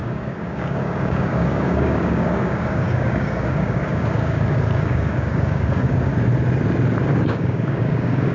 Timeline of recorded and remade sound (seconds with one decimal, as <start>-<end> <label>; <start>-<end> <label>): 0.0-6.1 remade; 6.1-7.1 recorded; 7.1-8.3 remade